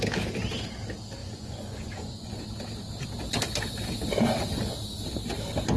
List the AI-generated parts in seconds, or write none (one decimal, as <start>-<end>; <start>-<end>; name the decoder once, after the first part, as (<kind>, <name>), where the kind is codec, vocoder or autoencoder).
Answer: 1.2-2.4 (vocoder, Vocos)